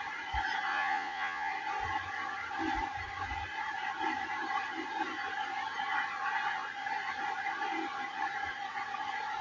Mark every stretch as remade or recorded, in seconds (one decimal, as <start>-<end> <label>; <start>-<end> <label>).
0.0-0.7 recorded; 0.7-1.5 remade; 1.5-9.4 recorded